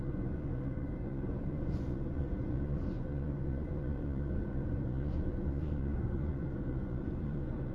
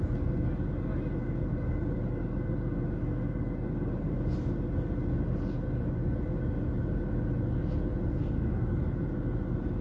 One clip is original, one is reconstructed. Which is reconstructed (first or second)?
first